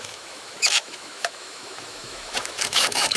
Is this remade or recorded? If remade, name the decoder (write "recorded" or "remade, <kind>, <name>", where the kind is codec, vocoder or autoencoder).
remade, autoencoder, DAC-VAE